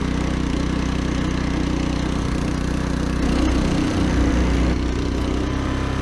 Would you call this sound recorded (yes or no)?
yes